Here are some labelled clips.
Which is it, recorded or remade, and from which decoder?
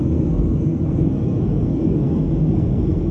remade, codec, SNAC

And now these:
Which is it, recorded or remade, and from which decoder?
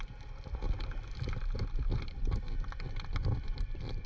recorded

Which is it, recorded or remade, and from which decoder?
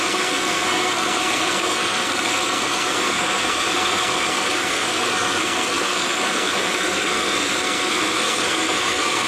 remade, codec, SNAC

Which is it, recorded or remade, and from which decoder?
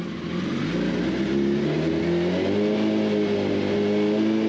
recorded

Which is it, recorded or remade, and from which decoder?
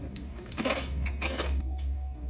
remade, codec, DAC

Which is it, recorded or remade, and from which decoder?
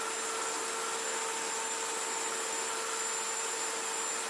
recorded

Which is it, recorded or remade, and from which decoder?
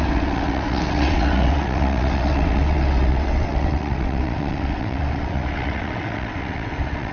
remade, vocoder, WaveNeXt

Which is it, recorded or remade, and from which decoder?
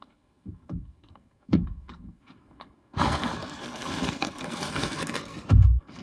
remade, codec, SNAC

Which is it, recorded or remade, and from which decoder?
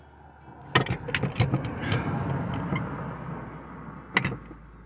recorded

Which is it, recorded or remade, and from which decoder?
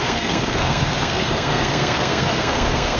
remade, codec, SNAC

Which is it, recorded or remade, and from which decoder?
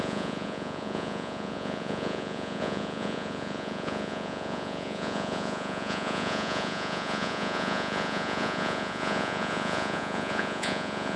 remade, vocoder, Vocos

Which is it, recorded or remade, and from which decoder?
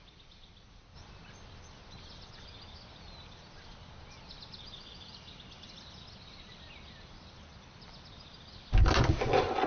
recorded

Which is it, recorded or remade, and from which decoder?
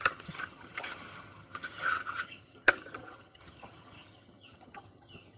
remade, vocoder, HiFi-GAN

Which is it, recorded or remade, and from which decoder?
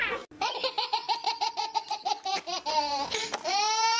recorded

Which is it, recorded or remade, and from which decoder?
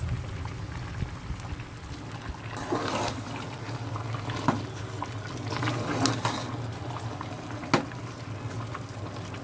recorded